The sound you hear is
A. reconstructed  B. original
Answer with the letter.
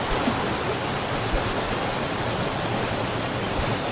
B